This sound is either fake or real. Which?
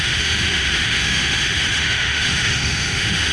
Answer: fake